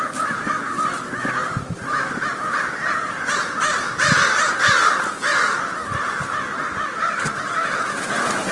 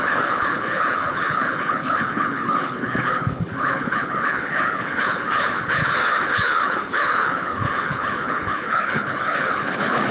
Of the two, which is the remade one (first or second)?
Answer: second